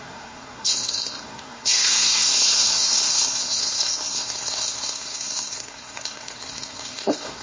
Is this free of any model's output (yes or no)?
no